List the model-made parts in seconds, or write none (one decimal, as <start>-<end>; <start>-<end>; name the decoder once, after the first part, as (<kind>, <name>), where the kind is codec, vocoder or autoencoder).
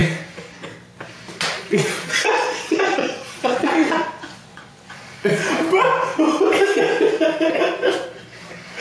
1.5-5.3 (vocoder, Vocos)